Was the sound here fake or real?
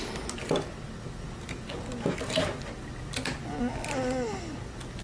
real